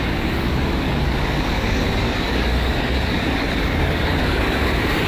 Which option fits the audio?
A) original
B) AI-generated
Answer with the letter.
B